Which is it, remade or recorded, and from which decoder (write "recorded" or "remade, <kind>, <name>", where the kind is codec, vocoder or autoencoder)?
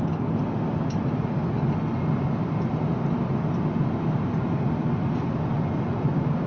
recorded